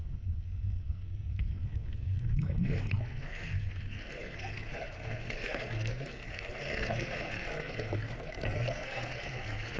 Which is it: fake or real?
fake